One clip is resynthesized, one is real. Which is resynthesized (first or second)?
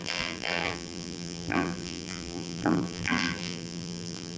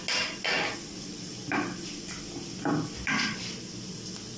first